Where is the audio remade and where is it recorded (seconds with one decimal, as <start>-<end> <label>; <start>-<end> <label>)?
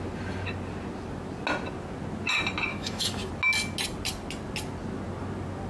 0.0-2.7 recorded; 2.7-3.3 remade; 3.3-5.7 recorded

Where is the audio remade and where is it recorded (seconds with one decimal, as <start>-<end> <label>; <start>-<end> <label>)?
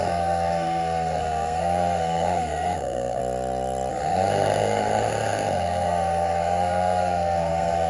0.0-3.2 remade; 3.2-3.9 recorded; 3.9-7.9 remade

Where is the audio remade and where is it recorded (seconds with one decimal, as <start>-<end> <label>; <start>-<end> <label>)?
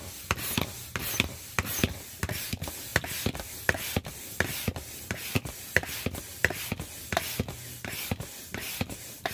0.0-1.0 recorded; 1.0-2.4 remade; 2.4-2.9 recorded; 2.9-6.7 remade; 6.7-9.3 recorded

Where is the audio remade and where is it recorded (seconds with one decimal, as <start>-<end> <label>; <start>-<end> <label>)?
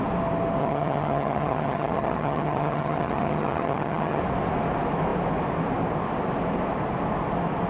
0.0-0.6 recorded; 0.6-4.2 remade; 4.2-7.7 recorded